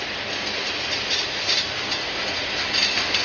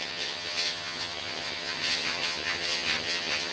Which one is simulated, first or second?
second